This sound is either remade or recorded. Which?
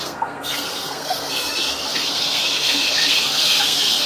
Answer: remade